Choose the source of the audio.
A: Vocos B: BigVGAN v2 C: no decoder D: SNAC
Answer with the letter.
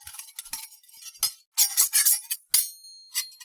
C